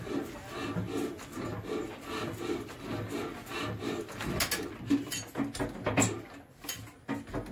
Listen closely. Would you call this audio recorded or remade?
recorded